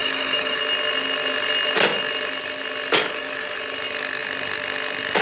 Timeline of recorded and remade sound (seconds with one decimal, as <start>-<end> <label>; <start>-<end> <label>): 0.0-0.6 remade; 0.6-3.0 recorded; 3.0-3.6 remade; 3.6-5.2 recorded